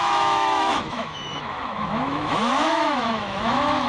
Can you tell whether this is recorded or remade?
remade